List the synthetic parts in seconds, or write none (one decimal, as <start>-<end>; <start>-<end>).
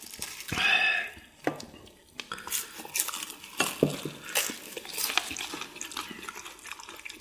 none